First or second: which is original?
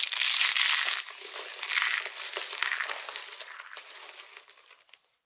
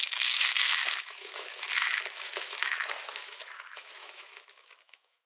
first